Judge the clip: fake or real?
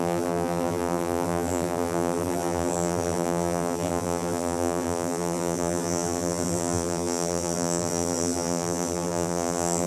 fake